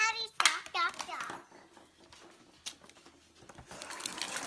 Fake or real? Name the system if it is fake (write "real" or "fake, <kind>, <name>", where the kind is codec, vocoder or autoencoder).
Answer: real